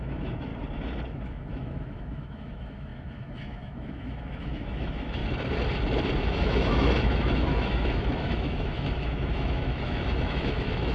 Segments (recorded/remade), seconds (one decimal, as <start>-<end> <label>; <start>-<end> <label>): 0.0-0.5 remade; 0.5-1.1 recorded; 1.1-5.2 remade; 5.2-6.2 recorded; 6.2-10.9 remade